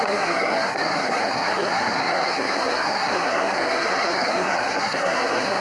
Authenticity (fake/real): fake